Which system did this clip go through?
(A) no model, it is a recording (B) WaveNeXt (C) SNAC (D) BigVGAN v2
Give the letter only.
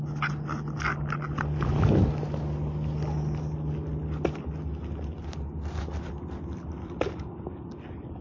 A